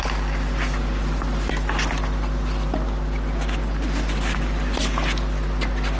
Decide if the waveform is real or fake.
real